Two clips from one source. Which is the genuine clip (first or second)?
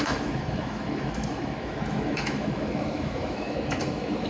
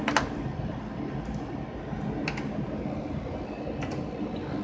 second